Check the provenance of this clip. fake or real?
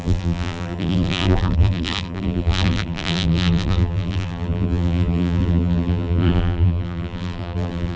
fake